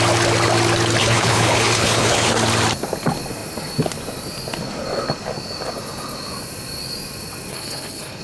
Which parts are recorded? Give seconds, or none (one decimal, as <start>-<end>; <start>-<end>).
0.0-1.0; 2.3-7.5